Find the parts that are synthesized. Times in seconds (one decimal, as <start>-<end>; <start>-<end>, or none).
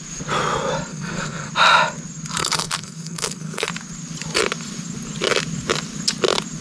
0.9-1.5; 2.4-3.7